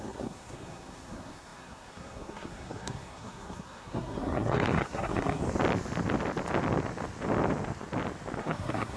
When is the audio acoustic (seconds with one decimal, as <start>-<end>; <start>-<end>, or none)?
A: 5.4-8.4